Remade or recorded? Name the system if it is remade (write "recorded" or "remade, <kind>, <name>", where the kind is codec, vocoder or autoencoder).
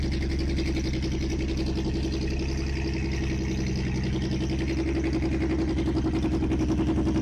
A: recorded